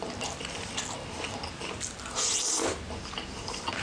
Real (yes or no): yes